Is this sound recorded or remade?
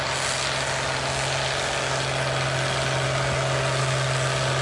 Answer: recorded